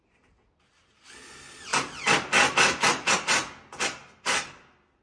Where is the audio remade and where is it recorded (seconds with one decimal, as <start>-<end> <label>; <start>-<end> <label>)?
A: 0.0-5.0 recorded